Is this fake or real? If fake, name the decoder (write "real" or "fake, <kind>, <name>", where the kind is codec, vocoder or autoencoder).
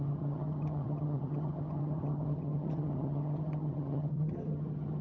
fake, vocoder, HiFi-GAN